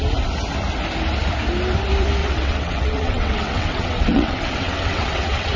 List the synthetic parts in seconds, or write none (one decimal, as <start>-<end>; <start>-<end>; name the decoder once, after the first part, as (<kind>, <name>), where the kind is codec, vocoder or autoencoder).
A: 2.2-5.6 (vocoder, WaveNeXt)